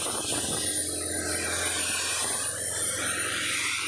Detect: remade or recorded recorded